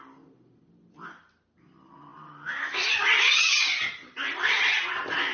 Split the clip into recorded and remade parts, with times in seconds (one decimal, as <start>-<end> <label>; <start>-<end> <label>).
0.0-5.3 recorded